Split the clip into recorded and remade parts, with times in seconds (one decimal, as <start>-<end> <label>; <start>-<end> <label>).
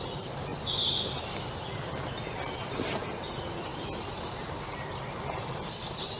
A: 0.0-3.7 recorded; 3.7-5.2 remade; 5.2-6.2 recorded